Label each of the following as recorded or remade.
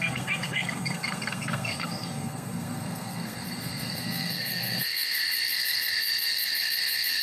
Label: remade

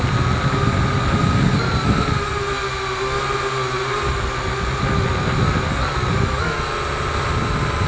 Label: recorded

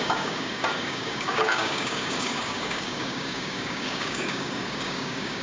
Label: remade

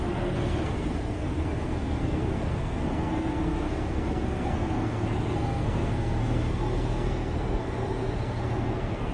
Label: remade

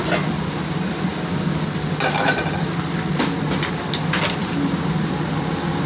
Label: recorded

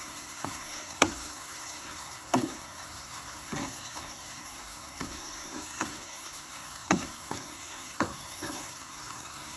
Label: remade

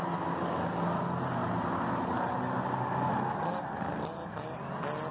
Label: recorded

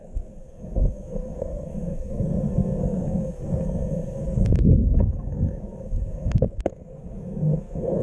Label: remade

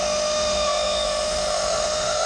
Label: remade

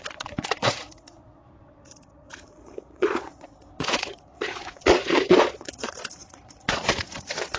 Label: remade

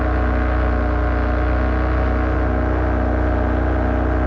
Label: recorded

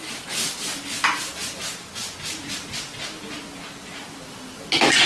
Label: recorded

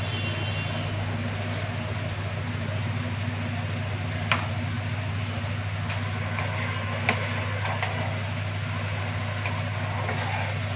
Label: recorded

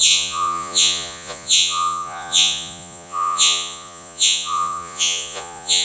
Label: remade